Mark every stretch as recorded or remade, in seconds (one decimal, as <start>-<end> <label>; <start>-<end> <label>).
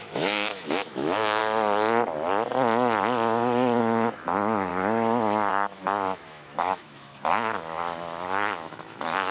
0.0-1.4 remade; 1.4-3.8 recorded; 3.8-4.7 remade; 4.7-5.5 recorded; 5.5-9.3 remade